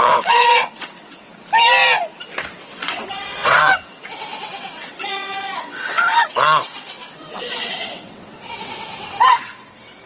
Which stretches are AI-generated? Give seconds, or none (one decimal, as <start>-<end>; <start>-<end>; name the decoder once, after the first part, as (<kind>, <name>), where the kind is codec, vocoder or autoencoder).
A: 0.0-1.3 (vocoder, WaveNeXt); 2.6-10.1